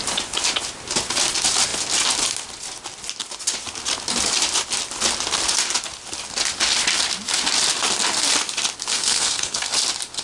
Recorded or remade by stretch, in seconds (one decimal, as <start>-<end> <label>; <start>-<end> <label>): 0.0-8.9 recorded; 8.9-9.7 remade; 9.7-10.2 recorded